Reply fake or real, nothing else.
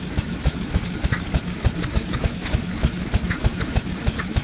fake